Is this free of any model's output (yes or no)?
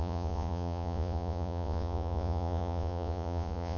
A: no